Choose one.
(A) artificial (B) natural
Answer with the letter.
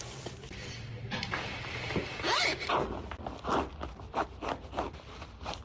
B